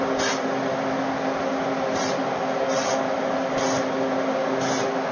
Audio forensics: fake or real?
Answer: real